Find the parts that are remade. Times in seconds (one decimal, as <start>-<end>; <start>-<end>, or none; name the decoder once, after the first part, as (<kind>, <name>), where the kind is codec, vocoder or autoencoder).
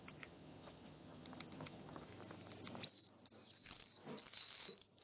0.0-2.1 (vocoder, HiFi-GAN)